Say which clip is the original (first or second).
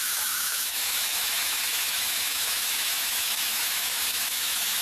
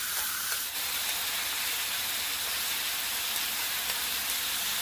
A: second